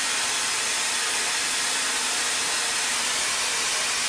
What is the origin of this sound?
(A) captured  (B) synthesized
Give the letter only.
A